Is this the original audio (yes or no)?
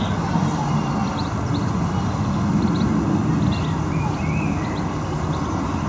yes